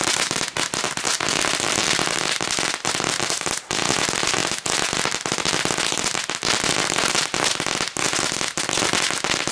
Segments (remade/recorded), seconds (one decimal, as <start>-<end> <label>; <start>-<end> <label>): 0.0-9.5 recorded